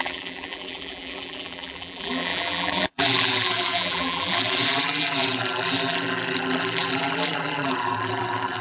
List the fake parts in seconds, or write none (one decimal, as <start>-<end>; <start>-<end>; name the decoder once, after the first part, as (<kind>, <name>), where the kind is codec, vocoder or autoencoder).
0.0-8.6 (vocoder, BigVGAN v2)